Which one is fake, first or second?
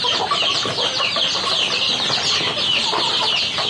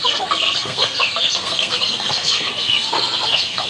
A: second